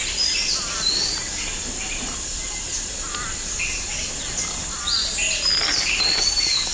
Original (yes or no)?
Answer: yes